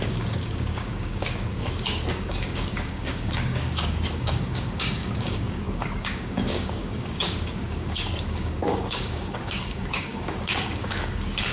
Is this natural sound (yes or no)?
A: no